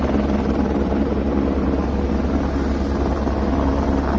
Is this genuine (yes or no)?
yes